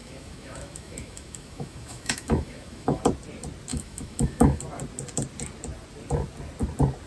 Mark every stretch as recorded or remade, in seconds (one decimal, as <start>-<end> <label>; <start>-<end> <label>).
0.0-3.0 remade; 3.0-3.7 recorded; 3.7-4.6 remade; 4.6-7.1 recorded